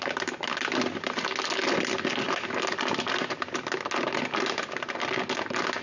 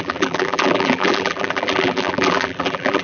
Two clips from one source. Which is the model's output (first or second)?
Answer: second